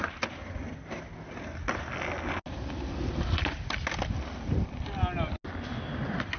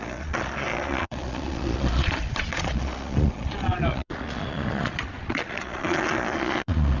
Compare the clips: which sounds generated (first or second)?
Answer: second